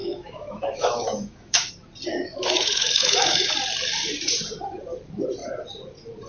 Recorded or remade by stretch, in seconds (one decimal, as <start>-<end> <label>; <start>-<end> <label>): 0.0-1.7 remade; 1.7-2.1 recorded; 2.1-3.5 remade; 3.5-6.3 recorded